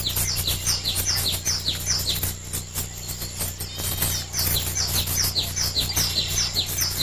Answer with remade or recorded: recorded